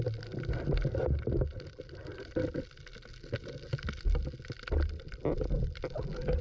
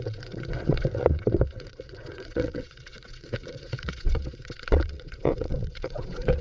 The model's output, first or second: second